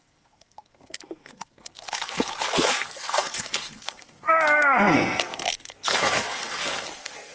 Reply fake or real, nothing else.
fake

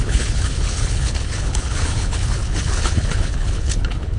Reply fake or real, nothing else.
fake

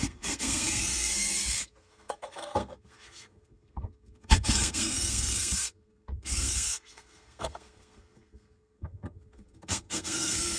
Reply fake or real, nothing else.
fake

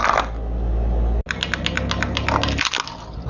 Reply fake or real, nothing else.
real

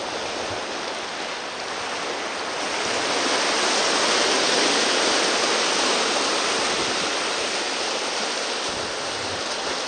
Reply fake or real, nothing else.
real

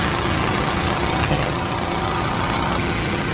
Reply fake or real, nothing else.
fake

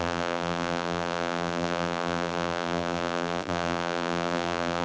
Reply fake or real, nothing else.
fake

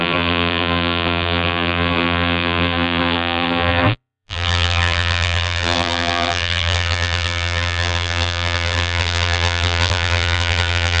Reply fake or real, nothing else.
fake